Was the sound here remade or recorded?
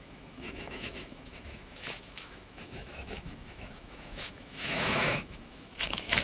remade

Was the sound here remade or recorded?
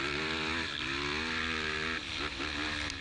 recorded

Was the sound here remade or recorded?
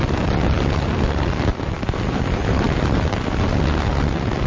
recorded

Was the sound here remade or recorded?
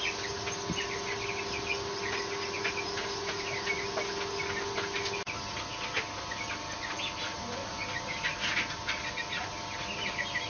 recorded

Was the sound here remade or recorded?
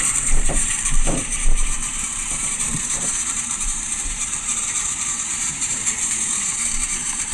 remade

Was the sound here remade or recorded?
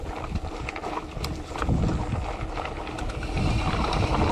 recorded